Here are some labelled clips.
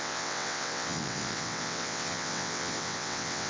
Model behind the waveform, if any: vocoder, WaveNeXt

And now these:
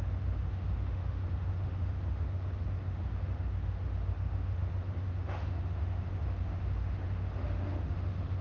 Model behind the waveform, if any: autoencoder, DAC-VAE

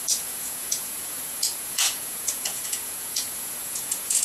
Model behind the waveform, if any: vocoder, Vocos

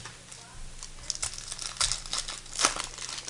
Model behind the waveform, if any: none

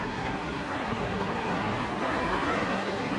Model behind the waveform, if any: codec, SNAC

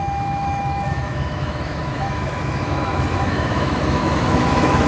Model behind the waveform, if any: autoencoder, DAC-VAE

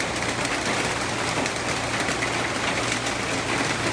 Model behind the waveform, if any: none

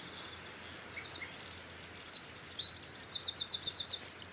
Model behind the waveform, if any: none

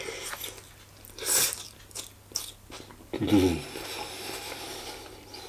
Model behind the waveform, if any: none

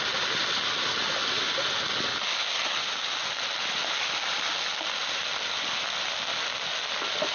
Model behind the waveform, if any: none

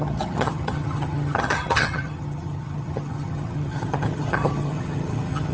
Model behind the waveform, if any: vocoder, HiFi-GAN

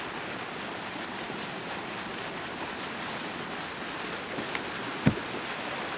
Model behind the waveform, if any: none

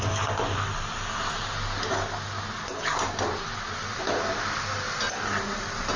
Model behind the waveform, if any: none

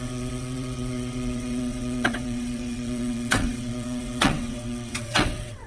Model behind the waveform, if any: vocoder, WaveNeXt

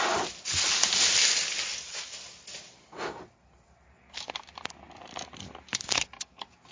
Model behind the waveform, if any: none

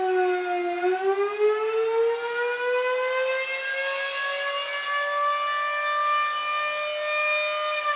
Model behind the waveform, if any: none